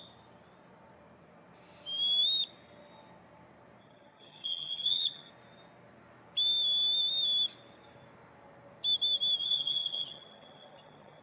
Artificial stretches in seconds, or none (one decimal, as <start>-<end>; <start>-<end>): 3.8-5.3; 9.4-11.2